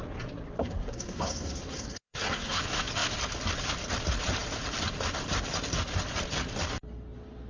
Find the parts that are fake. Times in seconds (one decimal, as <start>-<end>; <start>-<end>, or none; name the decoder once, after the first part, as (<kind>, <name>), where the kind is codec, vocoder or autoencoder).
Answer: 0.6-2.6 (codec, SNAC)